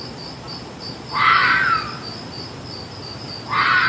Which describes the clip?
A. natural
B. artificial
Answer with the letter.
A